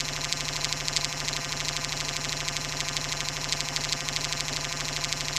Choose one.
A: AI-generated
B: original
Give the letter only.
A